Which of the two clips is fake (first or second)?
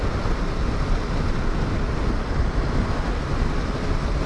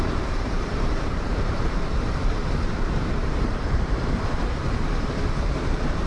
second